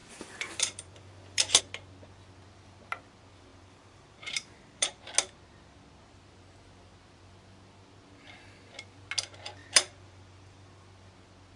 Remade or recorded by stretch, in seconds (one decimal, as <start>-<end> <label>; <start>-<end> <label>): 0.0-1.6 remade; 1.6-3.5 recorded; 3.5-5.0 remade; 5.0-9.6 recorded; 9.6-10.7 remade; 10.7-11.6 recorded